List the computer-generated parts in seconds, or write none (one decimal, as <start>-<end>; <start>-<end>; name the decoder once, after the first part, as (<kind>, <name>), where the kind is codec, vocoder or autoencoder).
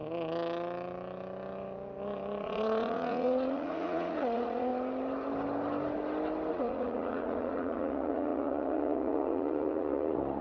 2.4-4.7 (vocoder, Vocos); 6.5-10.4